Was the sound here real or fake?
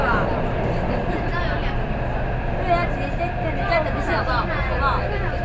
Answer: real